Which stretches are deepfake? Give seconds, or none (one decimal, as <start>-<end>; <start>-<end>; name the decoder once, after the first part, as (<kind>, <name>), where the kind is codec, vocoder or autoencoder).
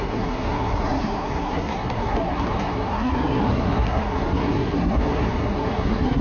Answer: 0.0-6.2 (codec, SNAC)